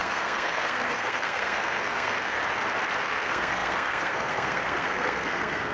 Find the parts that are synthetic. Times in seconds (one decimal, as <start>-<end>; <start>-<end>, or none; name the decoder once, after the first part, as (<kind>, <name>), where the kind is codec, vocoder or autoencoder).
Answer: 0.0-2.4 (codec, SNAC); 3.0-5.7